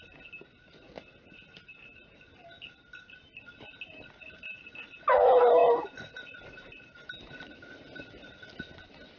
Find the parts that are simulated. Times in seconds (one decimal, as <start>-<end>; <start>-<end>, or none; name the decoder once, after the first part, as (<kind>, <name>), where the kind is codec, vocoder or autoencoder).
none

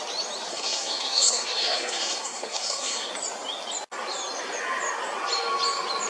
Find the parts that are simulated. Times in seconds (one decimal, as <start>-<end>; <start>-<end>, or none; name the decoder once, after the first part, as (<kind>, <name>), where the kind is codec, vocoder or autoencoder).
0.5-3.1 (codec, SNAC)

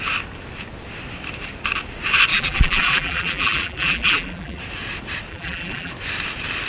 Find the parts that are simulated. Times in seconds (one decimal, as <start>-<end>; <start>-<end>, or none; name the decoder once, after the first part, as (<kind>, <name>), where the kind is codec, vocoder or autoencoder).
2.3-4.6 (vocoder, BigVGAN v2); 5.3-5.9

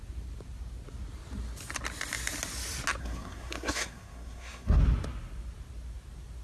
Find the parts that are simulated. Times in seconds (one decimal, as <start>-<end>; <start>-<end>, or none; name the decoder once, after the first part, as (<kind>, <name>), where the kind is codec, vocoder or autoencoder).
3.0-4.8 (codec, SNAC)

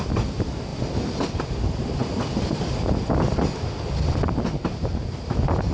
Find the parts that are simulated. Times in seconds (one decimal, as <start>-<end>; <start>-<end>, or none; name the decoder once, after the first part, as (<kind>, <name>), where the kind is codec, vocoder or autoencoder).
none

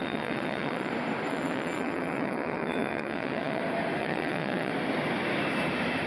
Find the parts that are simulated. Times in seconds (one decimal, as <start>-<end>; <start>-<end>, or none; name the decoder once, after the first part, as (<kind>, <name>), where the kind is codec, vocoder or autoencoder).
0.0-0.9 (vocoder, WaveNeXt); 1.3-3.6; 4.0-4.7

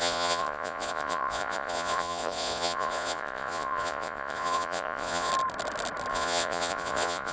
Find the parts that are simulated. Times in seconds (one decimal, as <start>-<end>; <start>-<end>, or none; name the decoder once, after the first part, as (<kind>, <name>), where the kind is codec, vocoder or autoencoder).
0.0-5.3 (vocoder, Vocos); 6.1-7.3

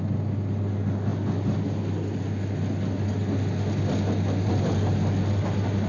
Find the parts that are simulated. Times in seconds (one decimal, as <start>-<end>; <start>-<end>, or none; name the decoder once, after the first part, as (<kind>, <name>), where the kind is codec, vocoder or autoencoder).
none